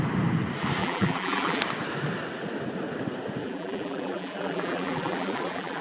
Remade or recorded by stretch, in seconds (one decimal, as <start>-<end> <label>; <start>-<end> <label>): 0.0-0.8 recorded; 0.8-1.6 remade; 1.6-3.4 recorded; 3.4-5.8 remade